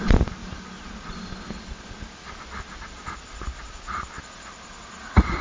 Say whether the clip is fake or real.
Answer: real